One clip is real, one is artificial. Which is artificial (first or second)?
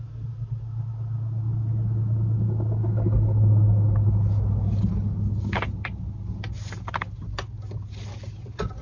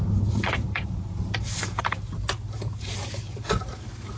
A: second